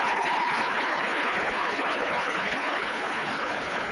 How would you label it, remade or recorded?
remade